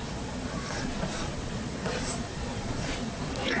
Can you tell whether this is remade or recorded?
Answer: remade